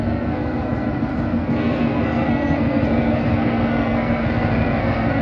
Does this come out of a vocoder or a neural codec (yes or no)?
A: yes